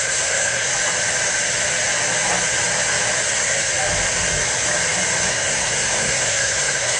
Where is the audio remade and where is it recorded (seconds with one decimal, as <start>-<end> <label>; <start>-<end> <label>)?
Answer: 0.0-0.7 remade; 0.7-3.3 recorded; 3.3-3.7 remade; 3.7-5.3 recorded; 5.3-7.0 remade

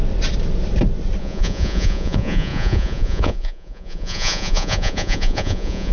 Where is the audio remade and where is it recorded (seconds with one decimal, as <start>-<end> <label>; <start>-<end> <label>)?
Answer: 0.0-1.2 recorded; 1.2-5.9 remade

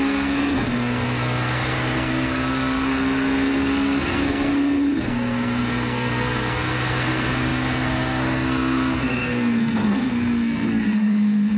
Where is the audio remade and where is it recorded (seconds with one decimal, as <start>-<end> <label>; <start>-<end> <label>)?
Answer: 0.0-11.6 remade

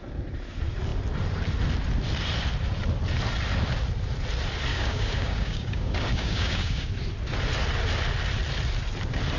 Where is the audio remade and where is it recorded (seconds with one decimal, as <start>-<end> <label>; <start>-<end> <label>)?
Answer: 0.0-4.7 recorded; 4.7-6.9 remade; 6.9-9.4 recorded